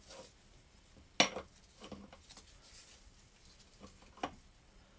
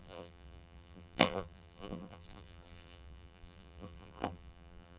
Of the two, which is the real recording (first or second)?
first